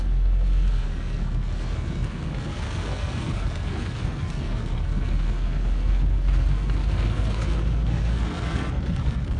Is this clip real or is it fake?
fake